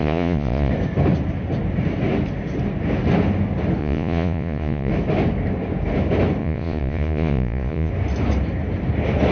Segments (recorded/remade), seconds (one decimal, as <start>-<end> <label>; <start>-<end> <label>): 0.0-0.7 remade; 0.7-3.8 recorded; 3.8-4.9 remade; 4.9-6.4 recorded; 6.4-7.9 remade; 7.9-9.3 recorded